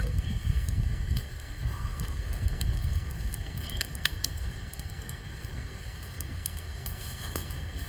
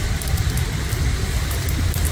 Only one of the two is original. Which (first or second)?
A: second